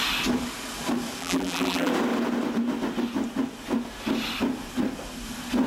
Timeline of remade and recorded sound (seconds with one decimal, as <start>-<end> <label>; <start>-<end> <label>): 0.0-1.2 recorded; 1.2-1.9 remade; 1.9-5.7 recorded